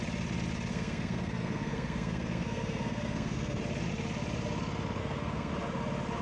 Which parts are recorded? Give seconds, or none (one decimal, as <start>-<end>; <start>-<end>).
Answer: 0.0-0.7; 3.6-5.0; 5.5-6.2